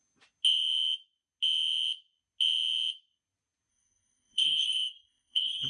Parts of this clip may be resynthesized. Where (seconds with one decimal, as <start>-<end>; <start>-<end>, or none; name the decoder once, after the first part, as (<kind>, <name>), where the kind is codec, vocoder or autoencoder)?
3.7-5.7 (codec, SNAC)